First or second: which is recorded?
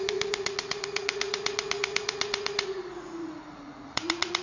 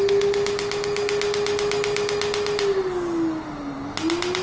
second